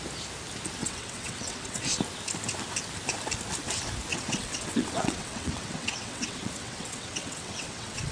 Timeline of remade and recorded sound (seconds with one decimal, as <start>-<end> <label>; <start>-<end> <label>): 0.0-0.8 recorded; 0.8-1.8 remade; 1.8-4.1 recorded; 4.1-8.1 remade